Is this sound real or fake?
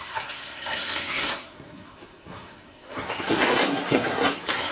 fake